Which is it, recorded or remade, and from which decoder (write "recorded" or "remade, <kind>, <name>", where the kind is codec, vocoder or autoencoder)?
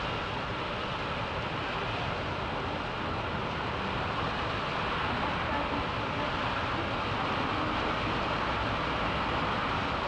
recorded